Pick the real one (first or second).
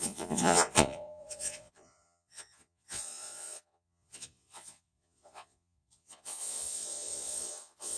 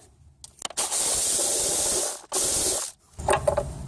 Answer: second